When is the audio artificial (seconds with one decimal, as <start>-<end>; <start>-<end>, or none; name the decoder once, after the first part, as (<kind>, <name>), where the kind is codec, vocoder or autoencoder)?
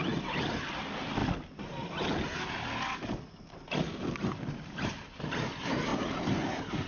none